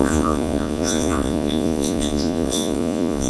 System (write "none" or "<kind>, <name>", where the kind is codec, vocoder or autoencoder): vocoder, Vocos